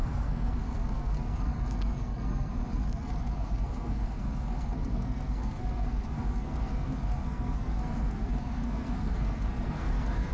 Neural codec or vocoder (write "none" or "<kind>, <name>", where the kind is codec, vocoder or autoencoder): codec, SNAC